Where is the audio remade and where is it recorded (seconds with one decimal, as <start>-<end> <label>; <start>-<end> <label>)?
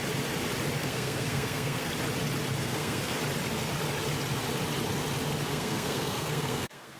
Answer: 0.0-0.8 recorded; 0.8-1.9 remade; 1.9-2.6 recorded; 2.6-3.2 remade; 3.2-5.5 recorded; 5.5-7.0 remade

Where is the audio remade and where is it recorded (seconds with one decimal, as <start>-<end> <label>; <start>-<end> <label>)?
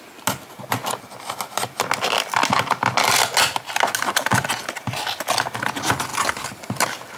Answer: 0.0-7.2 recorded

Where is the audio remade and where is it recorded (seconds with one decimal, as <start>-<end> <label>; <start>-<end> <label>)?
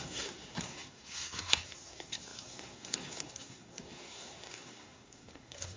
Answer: 0.0-5.8 remade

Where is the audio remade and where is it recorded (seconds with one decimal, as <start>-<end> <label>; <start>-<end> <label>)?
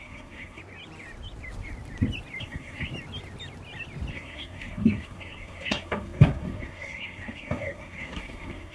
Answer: 0.0-0.6 remade; 0.6-2.4 recorded; 2.4-2.9 remade; 2.9-4.1 recorded; 4.1-8.7 remade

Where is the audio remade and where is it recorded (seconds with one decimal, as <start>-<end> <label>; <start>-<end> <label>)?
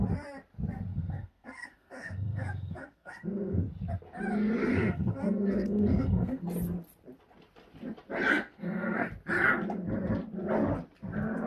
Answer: 0.0-0.9 recorded; 0.9-3.6 remade; 3.6-4.6 recorded; 4.6-6.4 remade; 6.4-8.3 recorded; 8.3-9.1 remade; 9.1-11.5 recorded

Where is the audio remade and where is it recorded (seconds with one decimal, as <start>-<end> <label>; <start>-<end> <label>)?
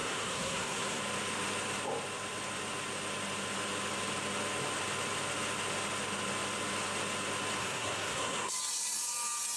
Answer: 0.0-1.0 remade; 1.0-7.6 recorded; 7.6-8.5 remade; 8.5-9.6 recorded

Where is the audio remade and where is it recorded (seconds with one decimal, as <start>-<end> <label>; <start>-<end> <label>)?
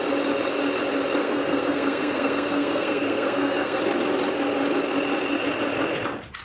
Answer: 0.0-1.2 recorded; 1.2-3.8 remade; 3.8-6.4 recorded